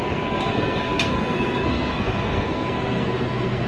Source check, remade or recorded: remade